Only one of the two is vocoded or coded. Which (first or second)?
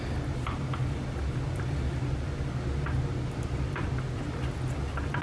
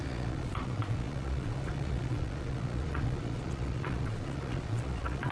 second